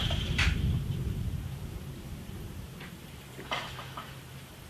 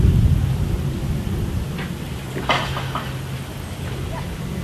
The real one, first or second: second